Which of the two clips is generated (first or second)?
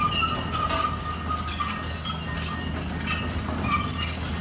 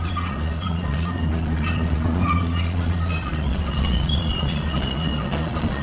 second